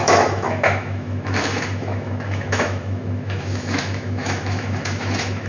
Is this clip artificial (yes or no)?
yes